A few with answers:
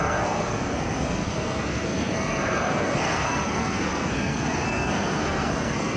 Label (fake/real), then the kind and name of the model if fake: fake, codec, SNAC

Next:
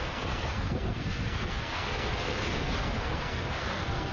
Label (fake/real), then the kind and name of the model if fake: fake, codec, SNAC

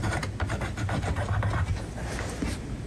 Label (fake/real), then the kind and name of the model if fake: real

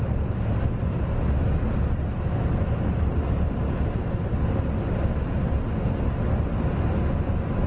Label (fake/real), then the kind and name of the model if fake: real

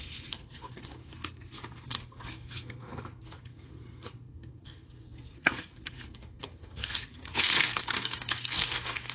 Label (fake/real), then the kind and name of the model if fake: fake, codec, SNAC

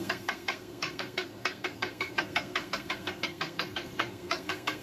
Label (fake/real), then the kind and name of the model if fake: fake, codec, SNAC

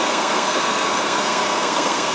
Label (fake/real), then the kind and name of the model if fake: fake, codec, SNAC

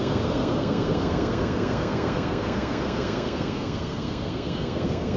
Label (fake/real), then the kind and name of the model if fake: fake, codec, SNAC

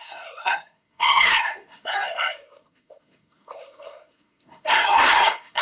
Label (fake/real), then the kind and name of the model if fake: fake, codec, SNAC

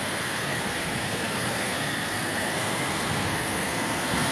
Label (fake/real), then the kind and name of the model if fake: fake, codec, SNAC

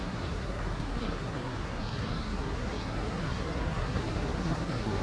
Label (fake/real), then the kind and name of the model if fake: fake, codec, SNAC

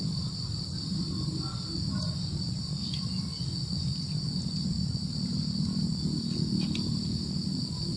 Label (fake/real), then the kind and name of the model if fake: real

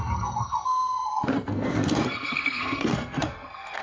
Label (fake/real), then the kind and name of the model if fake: fake, codec, SNAC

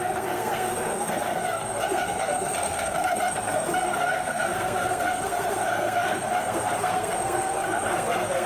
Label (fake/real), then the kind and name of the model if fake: fake, codec, SNAC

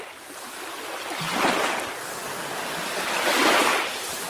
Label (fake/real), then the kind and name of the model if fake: real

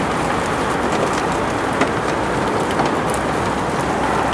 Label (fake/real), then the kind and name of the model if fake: real